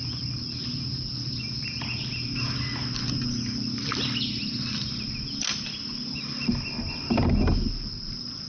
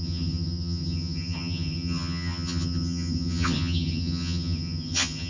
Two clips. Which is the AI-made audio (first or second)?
second